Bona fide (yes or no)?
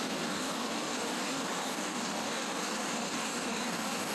no